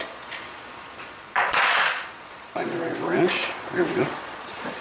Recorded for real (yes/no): no